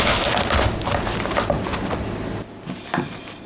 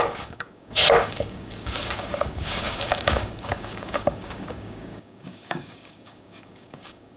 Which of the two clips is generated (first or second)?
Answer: second